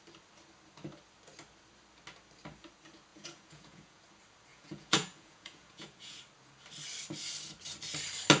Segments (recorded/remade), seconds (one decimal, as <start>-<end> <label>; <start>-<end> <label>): 0.0-3.1 recorded; 3.1-4.0 remade; 4.0-4.5 recorded; 4.5-6.2 remade; 6.2-8.4 recorded